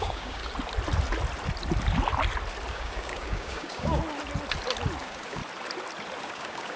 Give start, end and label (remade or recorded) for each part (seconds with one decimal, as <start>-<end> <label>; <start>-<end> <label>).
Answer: 0.0-0.4 remade; 0.4-2.7 recorded; 2.7-4.0 remade; 4.0-5.0 recorded; 5.0-5.4 remade; 5.4-6.2 recorded; 6.2-6.8 remade